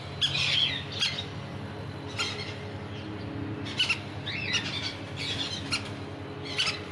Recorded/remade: recorded